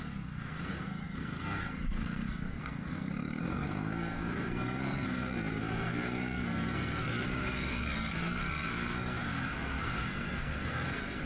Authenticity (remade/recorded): remade